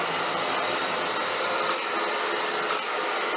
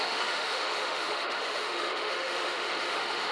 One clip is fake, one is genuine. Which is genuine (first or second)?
first